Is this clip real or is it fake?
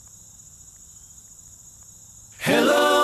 fake